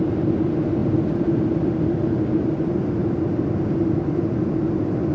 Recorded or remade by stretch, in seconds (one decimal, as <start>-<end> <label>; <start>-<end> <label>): 0.0-0.8 recorded; 0.8-1.8 remade; 1.8-5.1 recorded